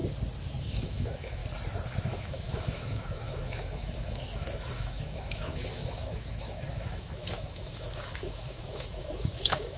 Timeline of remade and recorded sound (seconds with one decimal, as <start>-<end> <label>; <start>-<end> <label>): 0.0-0.6 recorded; 0.6-1.4 remade; 1.4-2.0 recorded; 2.0-9.8 remade